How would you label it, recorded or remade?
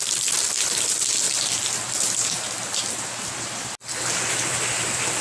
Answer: recorded